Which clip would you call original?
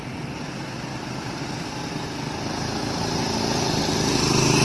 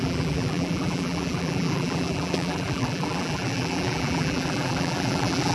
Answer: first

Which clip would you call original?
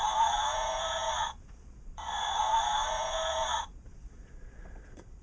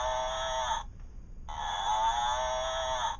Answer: second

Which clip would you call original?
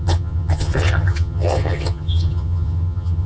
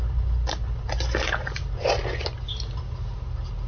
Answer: second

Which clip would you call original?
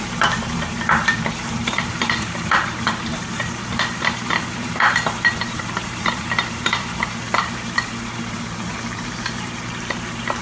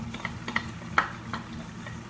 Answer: second